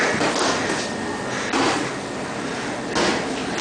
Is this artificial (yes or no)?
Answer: no